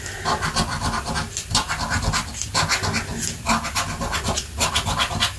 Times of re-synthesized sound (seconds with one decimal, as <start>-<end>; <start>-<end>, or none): 0.6-2.4; 3.1-4.7